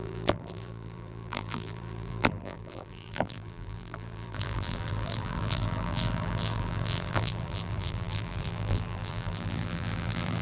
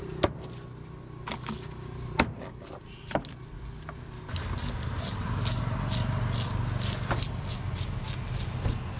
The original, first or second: second